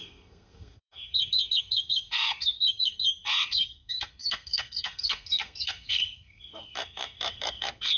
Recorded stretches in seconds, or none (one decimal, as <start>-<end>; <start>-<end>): none